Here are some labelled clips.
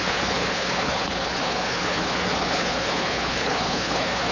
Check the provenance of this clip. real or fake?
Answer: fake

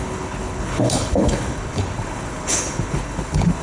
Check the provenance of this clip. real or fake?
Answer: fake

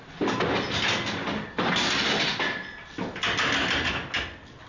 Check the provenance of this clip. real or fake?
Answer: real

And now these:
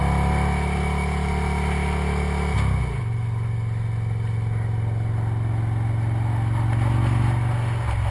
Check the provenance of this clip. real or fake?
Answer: real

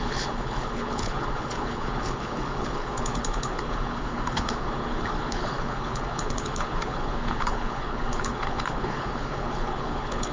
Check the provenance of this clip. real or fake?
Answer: fake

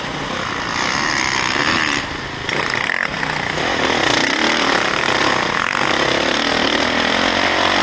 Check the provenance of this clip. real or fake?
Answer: real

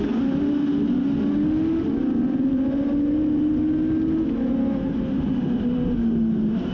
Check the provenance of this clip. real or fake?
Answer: real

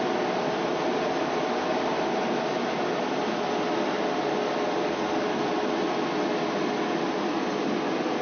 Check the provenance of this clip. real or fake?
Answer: real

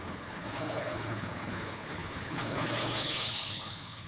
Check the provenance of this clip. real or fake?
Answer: fake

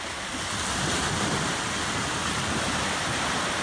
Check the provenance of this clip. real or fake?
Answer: real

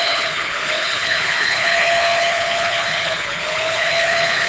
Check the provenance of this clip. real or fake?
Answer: fake